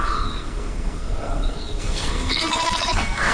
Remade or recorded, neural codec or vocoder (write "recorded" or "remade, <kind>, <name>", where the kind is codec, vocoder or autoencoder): remade, codec, SNAC